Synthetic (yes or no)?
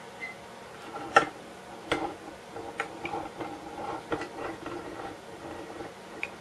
no